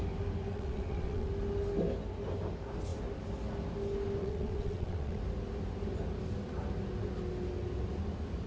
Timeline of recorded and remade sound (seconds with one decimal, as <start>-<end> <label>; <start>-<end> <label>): 0.0-0.5 recorded; 0.5-1.3 remade; 1.3-4.2 recorded; 4.2-5.2 remade; 5.2-8.5 recorded

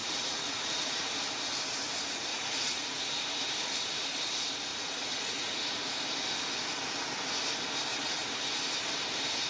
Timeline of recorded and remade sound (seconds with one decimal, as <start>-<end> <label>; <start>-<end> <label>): 0.0-1.0 remade; 1.0-2.3 recorded; 2.3-3.1 remade; 3.1-4.7 recorded; 4.7-6.0 remade; 6.0-7.9 recorded; 7.9-8.4 remade; 8.4-9.5 recorded

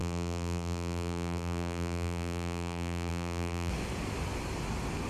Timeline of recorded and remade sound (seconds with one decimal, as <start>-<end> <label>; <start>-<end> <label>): 0.0-3.7 remade; 3.7-5.1 recorded